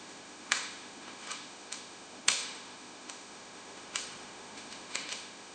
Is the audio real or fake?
fake